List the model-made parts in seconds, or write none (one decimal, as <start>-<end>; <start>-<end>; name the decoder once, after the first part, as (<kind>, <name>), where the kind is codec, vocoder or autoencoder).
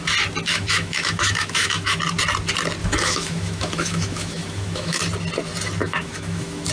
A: 0.5-2.0 (autoencoder, DAC-VAE); 2.8-5.0; 5.8-6.7